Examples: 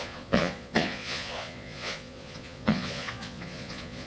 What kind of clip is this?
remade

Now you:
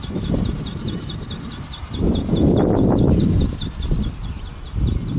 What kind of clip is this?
recorded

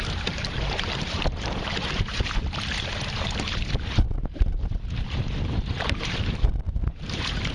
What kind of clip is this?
remade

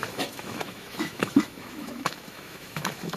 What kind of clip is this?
remade